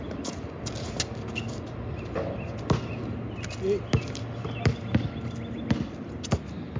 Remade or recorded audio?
recorded